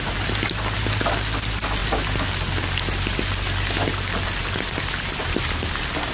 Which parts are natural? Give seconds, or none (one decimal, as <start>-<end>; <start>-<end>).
0.0-6.1